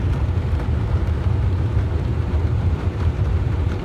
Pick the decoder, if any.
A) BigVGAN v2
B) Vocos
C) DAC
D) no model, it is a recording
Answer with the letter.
A